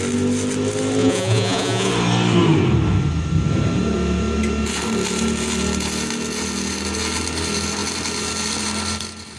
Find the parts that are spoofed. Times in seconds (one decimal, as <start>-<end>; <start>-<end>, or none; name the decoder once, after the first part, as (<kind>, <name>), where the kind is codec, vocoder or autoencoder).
1.0-1.9 (vocoder, Vocos)